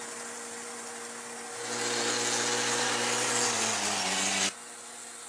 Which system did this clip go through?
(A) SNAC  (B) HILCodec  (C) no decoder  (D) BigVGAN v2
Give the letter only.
C